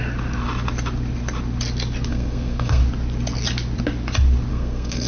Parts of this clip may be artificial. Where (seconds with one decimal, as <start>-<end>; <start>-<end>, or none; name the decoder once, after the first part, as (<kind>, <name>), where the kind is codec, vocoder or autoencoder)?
2.1-2.8 (codec, SNAC); 4.5-5.1